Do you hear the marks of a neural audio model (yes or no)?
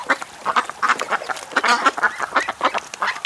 no